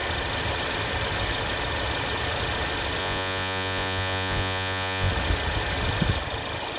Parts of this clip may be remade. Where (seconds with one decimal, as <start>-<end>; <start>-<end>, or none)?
3.0-5.1